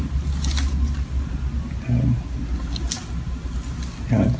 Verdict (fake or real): real